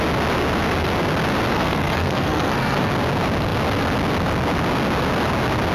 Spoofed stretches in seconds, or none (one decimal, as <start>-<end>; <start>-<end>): 1.5-2.9